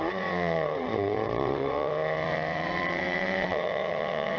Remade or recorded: remade